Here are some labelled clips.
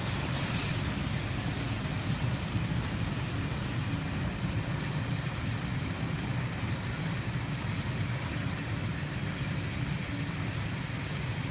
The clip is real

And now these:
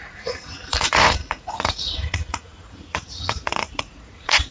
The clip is fake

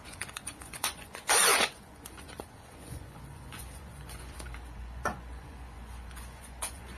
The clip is fake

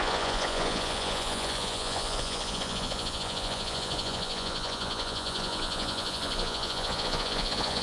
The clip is fake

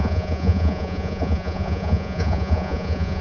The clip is fake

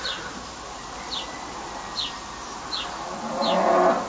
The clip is real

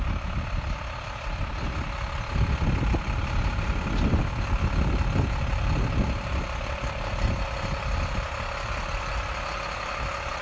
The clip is real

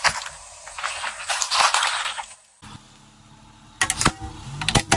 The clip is real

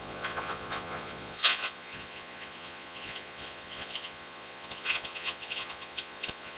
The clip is fake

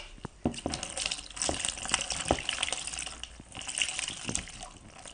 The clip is real